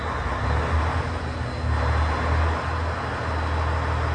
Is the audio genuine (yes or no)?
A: yes